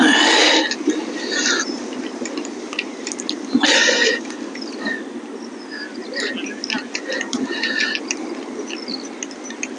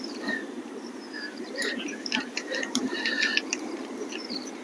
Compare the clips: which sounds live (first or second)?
first